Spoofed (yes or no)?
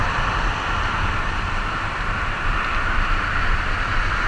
yes